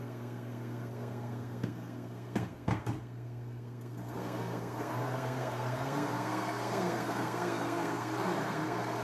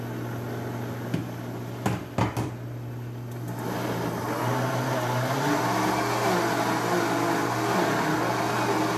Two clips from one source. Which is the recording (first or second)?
second